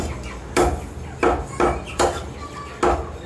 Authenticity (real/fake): real